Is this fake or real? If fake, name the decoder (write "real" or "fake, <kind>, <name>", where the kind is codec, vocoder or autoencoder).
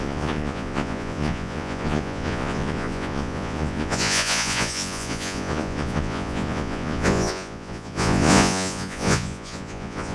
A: fake, vocoder, Vocos